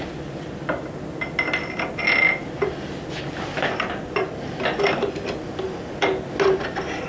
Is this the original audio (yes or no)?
yes